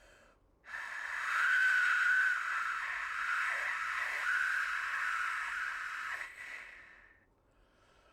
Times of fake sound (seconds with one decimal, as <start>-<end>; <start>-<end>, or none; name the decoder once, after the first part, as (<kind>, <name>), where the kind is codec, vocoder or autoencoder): 0.0-1.6 (vocoder, BigVGAN v2); 2.6-8.1